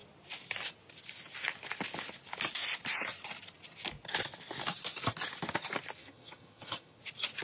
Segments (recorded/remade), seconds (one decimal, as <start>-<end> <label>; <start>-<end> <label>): 0.0-6.0 recorded; 6.0-7.0 remade; 7.0-7.4 recorded